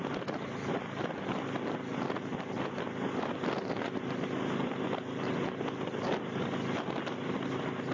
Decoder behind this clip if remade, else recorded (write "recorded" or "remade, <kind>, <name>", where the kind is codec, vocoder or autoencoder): recorded